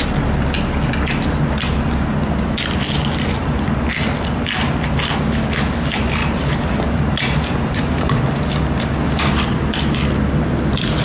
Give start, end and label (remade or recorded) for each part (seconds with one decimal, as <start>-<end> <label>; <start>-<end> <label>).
0.0-6.2 recorded; 6.2-8.2 remade; 8.2-11.0 recorded